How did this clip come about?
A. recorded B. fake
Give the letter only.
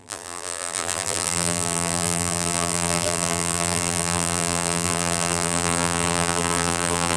B